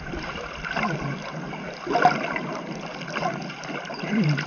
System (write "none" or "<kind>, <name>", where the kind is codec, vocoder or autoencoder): none